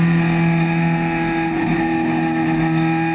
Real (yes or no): yes